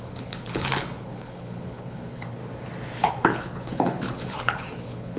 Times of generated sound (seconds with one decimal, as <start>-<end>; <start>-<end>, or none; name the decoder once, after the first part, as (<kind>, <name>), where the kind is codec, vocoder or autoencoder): 0.0-2.4 (codec, HILCodec); 3.1-5.2